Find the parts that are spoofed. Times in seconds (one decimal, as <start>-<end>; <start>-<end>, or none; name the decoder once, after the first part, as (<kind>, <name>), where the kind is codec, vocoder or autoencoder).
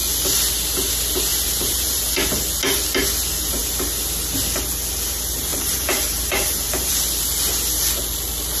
1.3-2.0 (vocoder, BigVGAN v2); 5.5-6.9